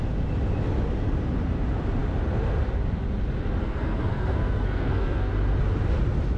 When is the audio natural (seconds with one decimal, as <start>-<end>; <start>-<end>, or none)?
0.0-3.6; 5.3-6.4